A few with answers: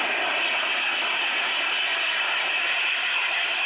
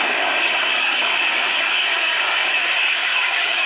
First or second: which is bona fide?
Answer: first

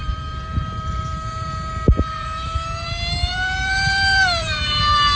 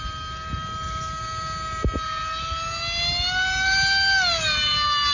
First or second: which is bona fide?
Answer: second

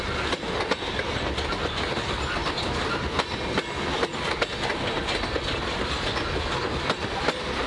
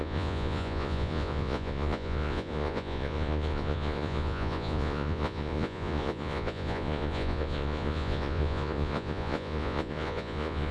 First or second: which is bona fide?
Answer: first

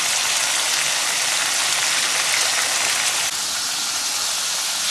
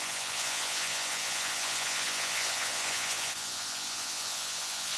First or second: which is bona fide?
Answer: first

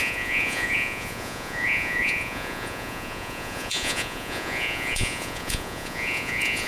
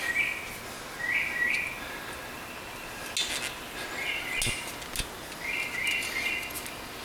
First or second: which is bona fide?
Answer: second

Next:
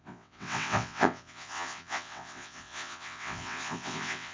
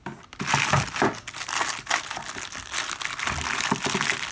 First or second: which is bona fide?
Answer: second